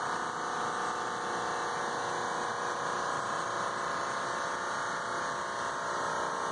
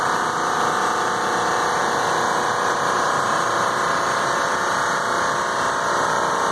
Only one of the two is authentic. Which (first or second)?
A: first